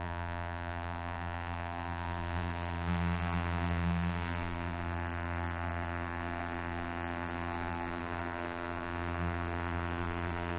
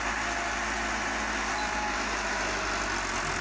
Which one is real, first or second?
second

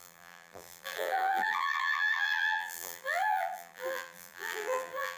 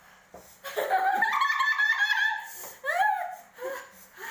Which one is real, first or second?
second